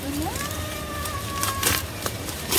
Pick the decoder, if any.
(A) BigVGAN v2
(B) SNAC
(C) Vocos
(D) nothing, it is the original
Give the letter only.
A